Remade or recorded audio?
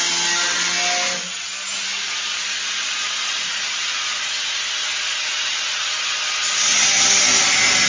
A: recorded